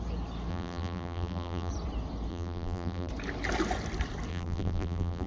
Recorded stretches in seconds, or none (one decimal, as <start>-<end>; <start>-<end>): 0.0-0.5; 1.7-2.3; 3.1-4.3